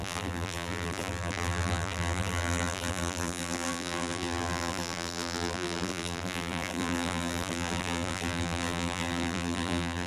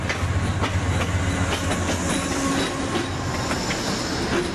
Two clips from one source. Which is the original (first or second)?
second